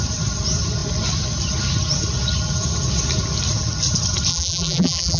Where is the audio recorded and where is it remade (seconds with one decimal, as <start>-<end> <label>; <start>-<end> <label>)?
0.0-4.3 recorded; 4.3-5.2 remade